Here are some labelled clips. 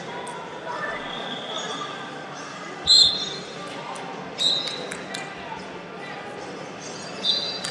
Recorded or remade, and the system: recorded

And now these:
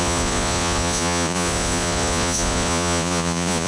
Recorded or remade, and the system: remade, vocoder, Vocos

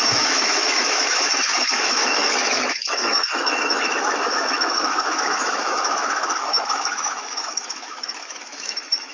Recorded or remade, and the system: remade, autoencoder, DAC-VAE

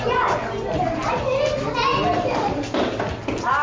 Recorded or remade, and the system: recorded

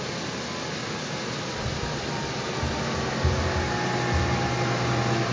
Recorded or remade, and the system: recorded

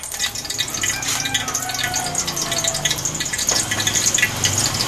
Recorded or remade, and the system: recorded